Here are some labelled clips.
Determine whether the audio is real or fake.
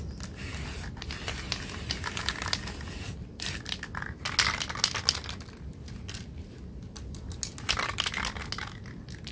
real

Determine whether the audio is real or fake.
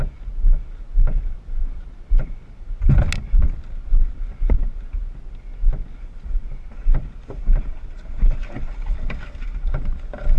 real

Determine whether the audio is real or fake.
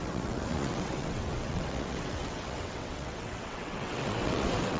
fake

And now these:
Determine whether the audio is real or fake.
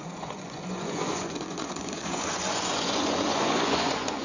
fake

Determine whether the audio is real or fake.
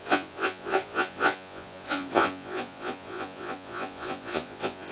fake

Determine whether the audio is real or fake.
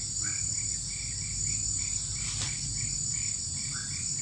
real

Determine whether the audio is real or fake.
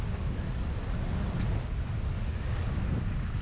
real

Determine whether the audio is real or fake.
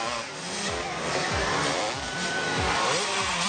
real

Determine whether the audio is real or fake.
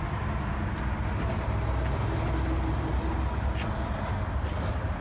real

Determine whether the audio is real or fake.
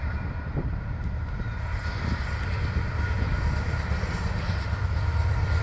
real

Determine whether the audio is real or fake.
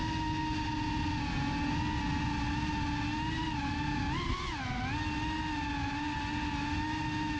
real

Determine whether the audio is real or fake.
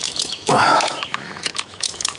fake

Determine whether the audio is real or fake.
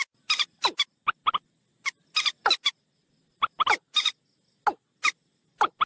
real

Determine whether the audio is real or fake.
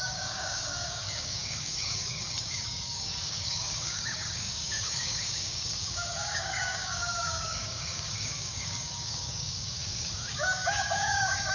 fake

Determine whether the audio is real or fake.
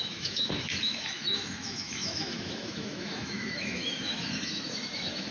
fake